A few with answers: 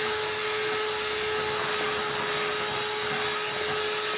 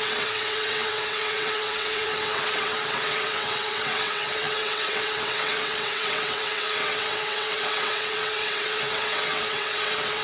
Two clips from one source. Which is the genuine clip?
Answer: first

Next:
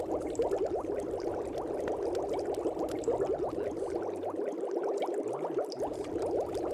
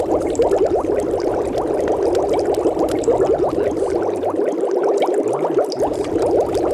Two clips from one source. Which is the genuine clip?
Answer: first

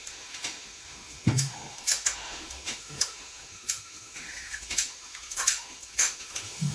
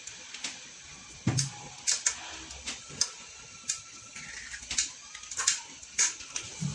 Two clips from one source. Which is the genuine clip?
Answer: second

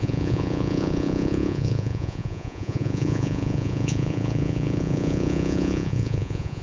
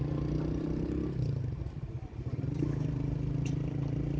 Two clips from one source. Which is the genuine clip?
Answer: second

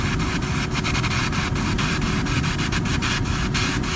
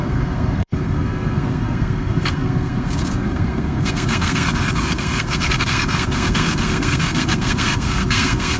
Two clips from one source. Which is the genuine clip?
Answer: first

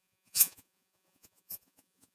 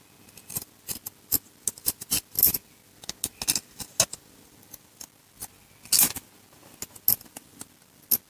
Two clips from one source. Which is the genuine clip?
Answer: second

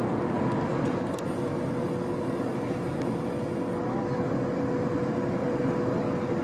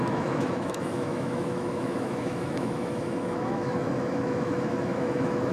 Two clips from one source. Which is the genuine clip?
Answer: first